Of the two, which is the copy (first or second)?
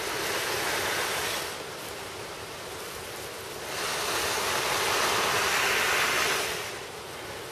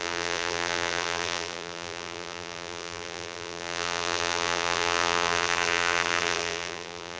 second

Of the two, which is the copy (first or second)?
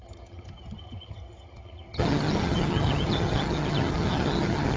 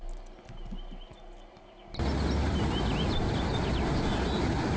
first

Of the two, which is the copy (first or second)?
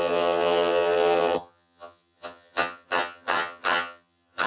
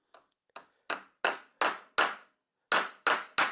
first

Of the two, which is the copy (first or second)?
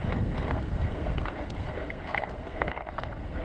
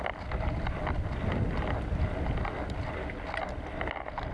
first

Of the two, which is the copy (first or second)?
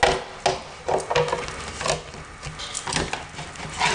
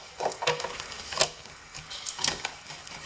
second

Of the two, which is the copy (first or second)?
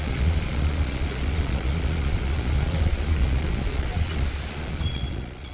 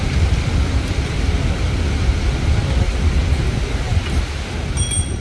first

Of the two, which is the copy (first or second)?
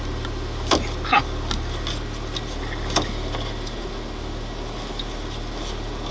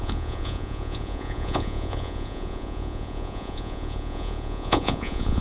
second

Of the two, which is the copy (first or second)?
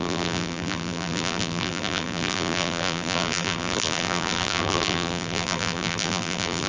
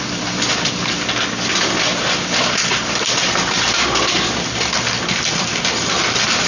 first